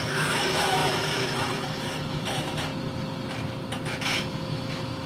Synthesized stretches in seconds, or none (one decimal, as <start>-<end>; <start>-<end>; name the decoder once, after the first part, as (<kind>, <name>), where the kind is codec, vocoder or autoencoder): 0.0-2.7 (autoencoder, DAC-VAE); 4.0-5.1